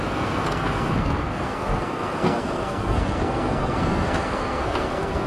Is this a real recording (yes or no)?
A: no